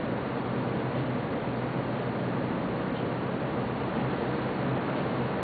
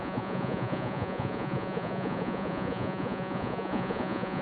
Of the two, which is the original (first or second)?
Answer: first